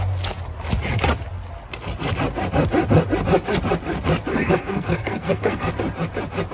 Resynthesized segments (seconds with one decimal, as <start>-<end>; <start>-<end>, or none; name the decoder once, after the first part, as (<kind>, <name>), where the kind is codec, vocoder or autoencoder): 4.3-5.7 (codec, SNAC)